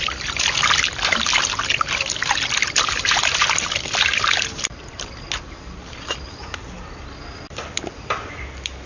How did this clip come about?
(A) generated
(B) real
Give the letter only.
B